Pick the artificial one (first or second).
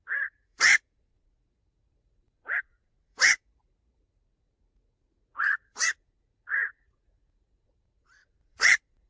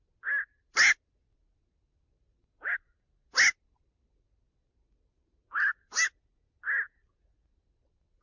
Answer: first